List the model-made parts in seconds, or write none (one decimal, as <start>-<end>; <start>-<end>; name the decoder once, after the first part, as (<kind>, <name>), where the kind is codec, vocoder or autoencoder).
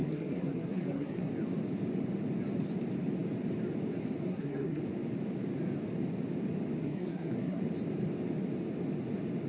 0.0-1.3 (codec, SNAC); 4.3-4.8; 6.8-7.6